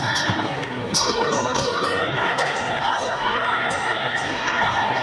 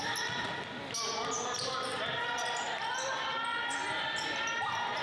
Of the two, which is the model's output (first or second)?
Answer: first